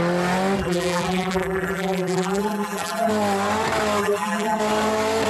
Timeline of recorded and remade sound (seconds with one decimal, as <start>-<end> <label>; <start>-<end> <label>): 0.0-0.6 recorded; 0.6-3.1 remade; 3.1-4.0 recorded; 4.0-4.6 remade; 4.6-5.3 recorded